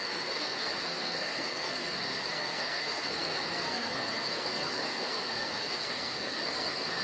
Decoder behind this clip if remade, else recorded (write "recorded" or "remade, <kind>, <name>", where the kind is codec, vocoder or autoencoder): remade, codec, SNAC